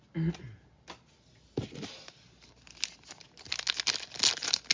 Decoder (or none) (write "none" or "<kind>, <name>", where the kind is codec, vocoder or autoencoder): none